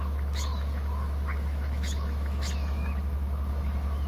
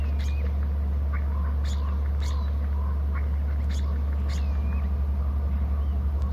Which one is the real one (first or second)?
second